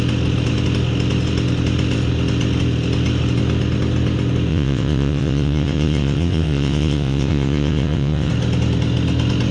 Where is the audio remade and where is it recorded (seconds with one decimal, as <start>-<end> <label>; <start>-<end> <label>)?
0.0-4.5 recorded; 4.5-8.3 remade; 8.3-9.5 recorded

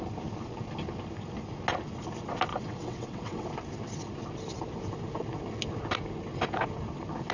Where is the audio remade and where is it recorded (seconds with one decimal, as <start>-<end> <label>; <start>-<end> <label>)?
0.0-2.5 recorded; 2.5-3.5 remade; 3.5-7.3 recorded

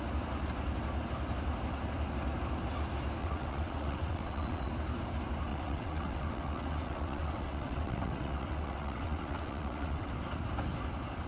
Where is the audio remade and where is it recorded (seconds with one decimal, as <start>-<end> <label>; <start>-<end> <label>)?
0.0-3.2 recorded; 3.2-4.7 remade; 4.7-5.5 recorded; 5.5-10.1 remade; 10.1-11.3 recorded